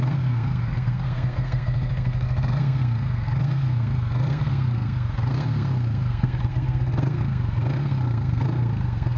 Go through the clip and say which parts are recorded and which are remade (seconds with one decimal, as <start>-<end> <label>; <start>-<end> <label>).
0.0-9.2 remade

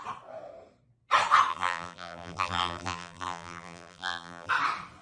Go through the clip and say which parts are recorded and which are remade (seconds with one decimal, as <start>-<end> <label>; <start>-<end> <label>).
0.0-1.5 recorded; 1.5-4.5 remade; 4.5-5.0 recorded

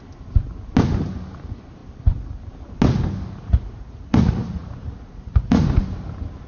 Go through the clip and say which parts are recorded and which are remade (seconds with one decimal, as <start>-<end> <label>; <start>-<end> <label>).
0.0-3.4 recorded; 3.4-5.6 remade; 5.6-6.5 recorded

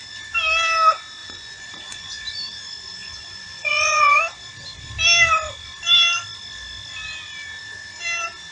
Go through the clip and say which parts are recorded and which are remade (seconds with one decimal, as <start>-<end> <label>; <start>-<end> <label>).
0.0-1.2 recorded; 1.2-2.2 remade; 2.2-3.0 recorded; 3.0-4.2 remade; 4.2-8.5 recorded